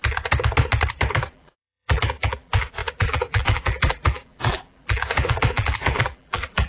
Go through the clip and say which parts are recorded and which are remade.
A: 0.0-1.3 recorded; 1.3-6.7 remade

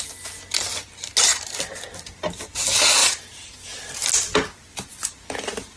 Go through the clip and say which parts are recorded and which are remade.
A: 0.0-3.0 recorded; 3.0-3.6 remade; 3.6-5.8 recorded

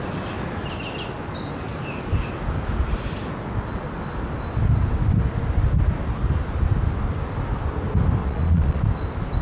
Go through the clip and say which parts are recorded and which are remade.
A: 0.0-8.2 recorded; 8.2-8.8 remade; 8.8-9.4 recorded